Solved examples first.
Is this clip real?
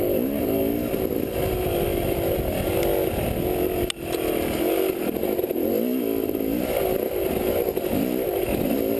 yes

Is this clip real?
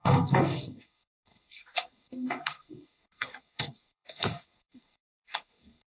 no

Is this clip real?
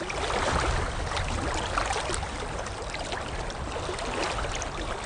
yes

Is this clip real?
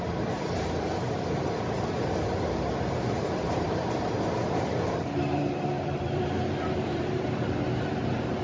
no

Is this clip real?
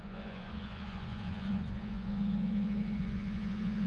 no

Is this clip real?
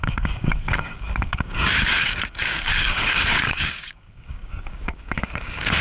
no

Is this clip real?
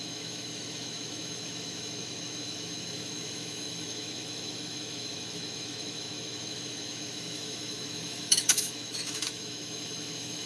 no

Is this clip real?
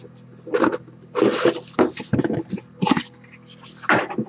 yes